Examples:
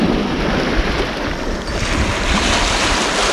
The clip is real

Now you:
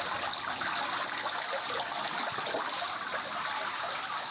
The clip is real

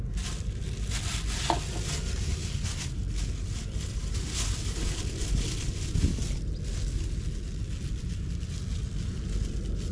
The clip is real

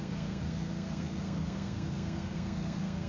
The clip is fake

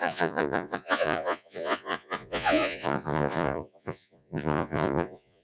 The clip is fake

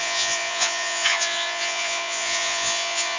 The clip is fake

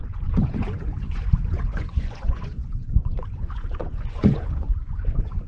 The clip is fake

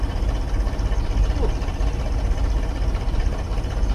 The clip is real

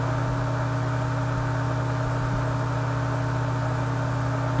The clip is real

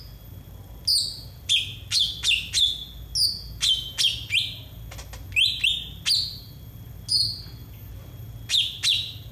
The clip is real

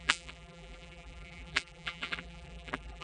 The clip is fake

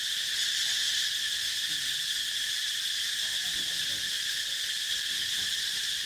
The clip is real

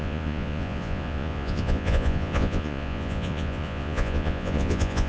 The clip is fake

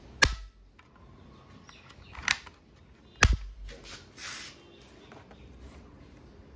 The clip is real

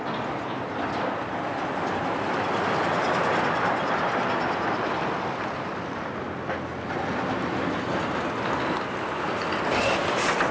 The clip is real